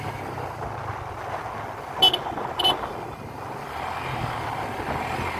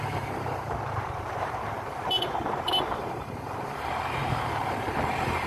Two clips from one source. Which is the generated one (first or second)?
second